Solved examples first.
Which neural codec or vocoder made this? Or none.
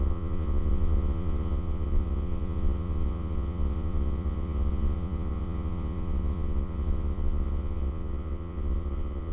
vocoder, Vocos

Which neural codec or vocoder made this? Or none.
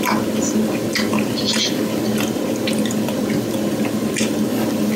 none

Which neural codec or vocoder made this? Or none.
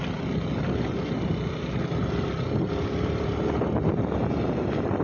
none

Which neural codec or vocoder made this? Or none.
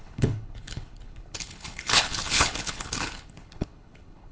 codec, HILCodec